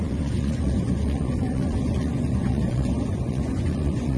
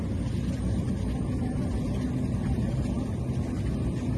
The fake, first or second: first